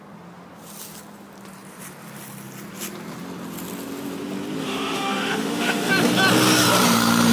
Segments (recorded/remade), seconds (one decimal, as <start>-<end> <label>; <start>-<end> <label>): 0.0-4.6 recorded; 4.6-5.9 remade; 5.9-7.3 recorded